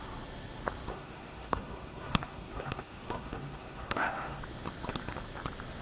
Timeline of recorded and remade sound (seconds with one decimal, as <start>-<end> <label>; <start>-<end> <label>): 0.0-0.9 recorded; 0.9-4.4 remade; 4.4-5.8 recorded